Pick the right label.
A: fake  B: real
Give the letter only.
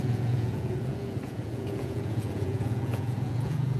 A